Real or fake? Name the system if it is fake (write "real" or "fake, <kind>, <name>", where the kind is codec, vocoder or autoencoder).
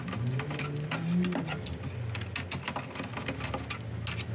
real